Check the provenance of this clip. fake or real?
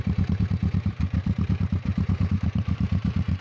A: fake